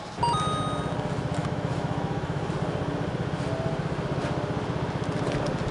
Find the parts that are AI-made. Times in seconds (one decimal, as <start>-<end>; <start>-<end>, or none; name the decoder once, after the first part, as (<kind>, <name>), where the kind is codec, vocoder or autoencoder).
1.4-2.5 (autoencoder, DAC-VAE)